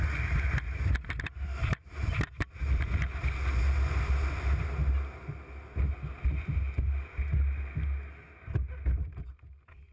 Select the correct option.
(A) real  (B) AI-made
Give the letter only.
A